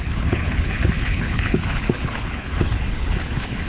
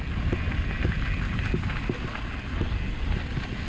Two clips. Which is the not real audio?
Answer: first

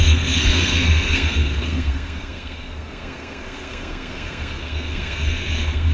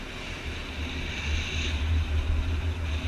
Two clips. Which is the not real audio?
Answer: first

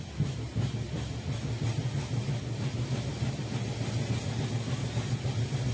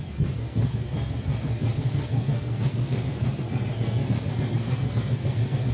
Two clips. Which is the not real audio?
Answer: second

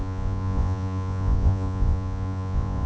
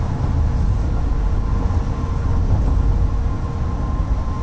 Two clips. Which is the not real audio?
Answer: first